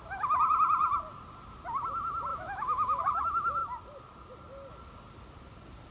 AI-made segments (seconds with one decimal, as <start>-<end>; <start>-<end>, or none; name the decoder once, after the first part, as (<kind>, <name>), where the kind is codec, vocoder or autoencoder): 2.3-3.0 (autoencoder, DAC-VAE)